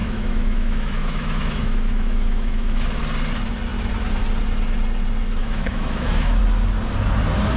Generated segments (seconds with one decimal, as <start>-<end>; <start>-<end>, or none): 0.0-3.0; 5.4-6.4